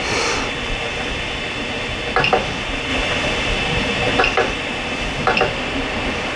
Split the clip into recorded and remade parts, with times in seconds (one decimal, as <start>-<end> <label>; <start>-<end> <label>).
0.0-6.4 remade